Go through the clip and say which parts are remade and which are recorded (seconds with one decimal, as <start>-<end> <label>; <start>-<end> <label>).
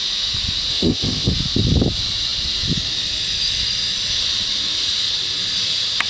0.0-0.7 recorded; 0.7-1.3 remade; 1.3-6.1 recorded